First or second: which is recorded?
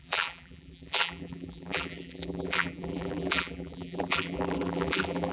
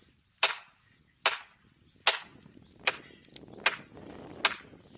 second